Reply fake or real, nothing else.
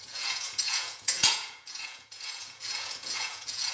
fake